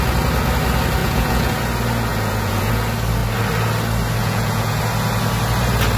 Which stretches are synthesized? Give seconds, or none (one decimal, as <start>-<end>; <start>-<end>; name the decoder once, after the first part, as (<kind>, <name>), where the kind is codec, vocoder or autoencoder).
1.0-1.6 (vocoder, Vocos); 2.1-2.7; 4.2-4.8